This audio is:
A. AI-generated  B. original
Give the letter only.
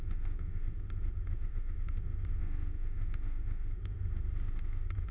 A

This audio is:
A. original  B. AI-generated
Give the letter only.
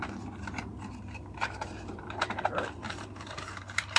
B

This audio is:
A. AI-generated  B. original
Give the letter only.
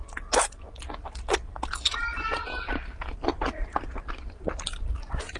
B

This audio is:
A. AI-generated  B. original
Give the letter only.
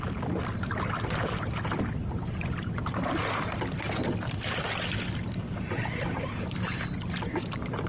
B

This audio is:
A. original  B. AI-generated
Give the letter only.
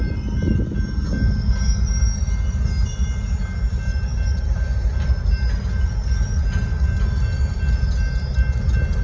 A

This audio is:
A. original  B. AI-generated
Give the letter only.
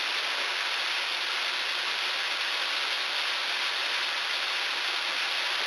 A